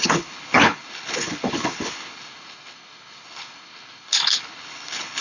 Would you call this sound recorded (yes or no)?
no